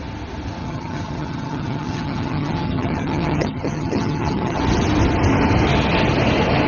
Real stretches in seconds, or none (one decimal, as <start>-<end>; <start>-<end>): 0.0-0.6; 4.6-6.7